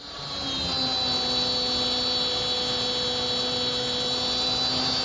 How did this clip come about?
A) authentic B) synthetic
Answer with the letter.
A